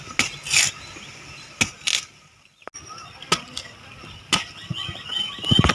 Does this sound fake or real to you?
real